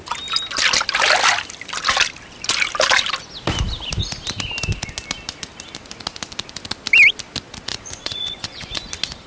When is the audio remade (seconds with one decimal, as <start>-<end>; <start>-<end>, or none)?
7.7-8.9